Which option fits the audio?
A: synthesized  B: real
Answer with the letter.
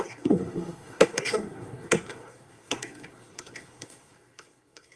A